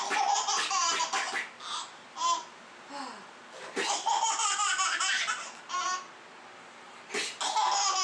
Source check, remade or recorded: recorded